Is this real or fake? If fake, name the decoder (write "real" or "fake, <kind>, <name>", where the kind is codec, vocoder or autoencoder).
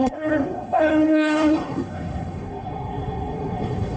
fake, codec, SNAC